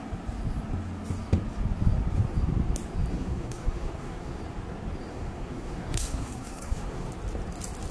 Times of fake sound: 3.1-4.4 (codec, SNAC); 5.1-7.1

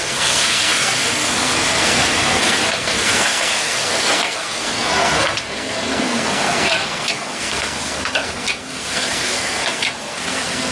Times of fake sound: 0.0-10.7 (codec, SNAC)

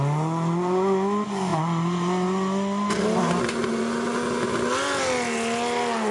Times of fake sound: none

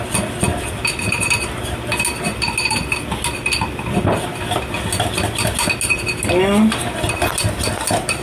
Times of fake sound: none

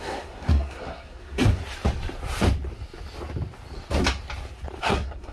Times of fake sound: 0.0-1.6 (codec, SNAC); 4.8-5.3

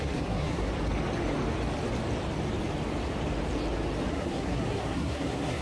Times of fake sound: 0.0-0.7 (codec, SNAC); 4.1-5.6

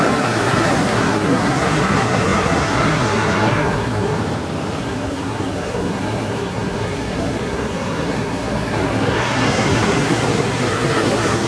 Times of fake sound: 0.0-4.2 (codec, SNAC); 4.8-11.5

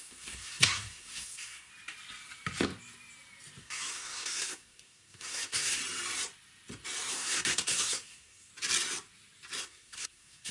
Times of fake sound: 0.0-1.7 (codec, SNAC); 3.6-5.8; 7.1-8.5; 9.6-10.5